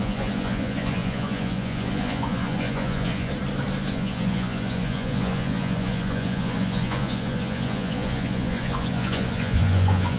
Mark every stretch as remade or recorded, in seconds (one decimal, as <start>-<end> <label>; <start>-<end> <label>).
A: 0.0-3.3 remade; 3.3-3.9 recorded; 3.9-10.2 remade